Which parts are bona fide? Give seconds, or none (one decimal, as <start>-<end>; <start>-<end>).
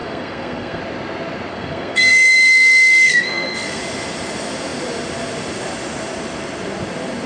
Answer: 0.8-1.5; 3.8-7.3